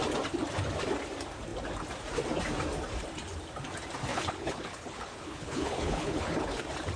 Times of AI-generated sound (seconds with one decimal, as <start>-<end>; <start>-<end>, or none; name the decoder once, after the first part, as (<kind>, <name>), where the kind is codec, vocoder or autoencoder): 4.1-6.6 (codec, HILCodec)